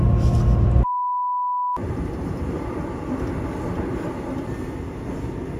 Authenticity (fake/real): real